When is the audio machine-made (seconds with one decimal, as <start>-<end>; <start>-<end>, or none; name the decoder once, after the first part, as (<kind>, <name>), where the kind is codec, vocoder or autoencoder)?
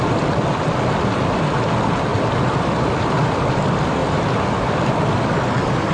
none